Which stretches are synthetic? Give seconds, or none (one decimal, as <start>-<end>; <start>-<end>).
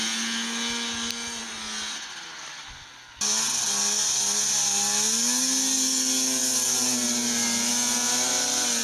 none